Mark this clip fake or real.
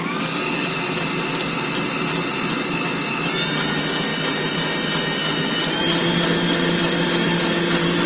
real